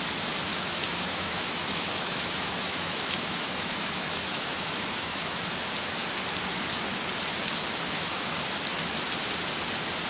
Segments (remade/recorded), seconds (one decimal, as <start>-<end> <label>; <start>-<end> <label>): 0.0-0.5 recorded; 0.5-5.5 remade; 5.5-7.7 recorded; 7.7-8.3 remade; 8.3-10.1 recorded